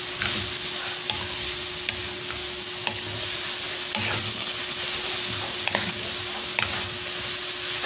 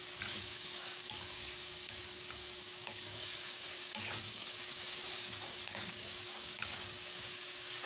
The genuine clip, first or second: first